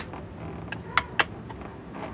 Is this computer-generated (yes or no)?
no